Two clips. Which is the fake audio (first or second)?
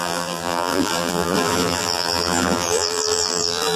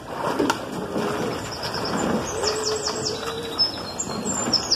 first